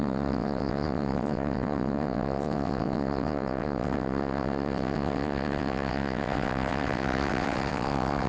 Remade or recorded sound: remade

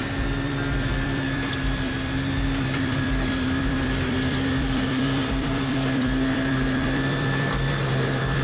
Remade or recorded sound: remade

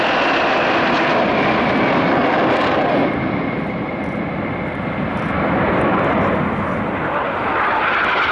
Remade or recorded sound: recorded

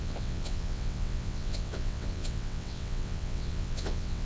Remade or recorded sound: remade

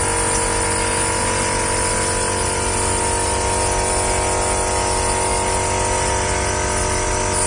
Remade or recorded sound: recorded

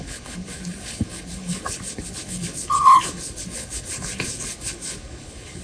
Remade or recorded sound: remade